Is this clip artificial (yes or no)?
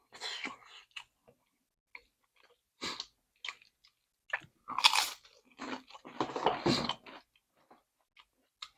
no